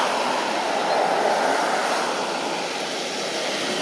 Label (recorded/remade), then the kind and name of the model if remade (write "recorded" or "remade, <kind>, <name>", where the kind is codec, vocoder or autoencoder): recorded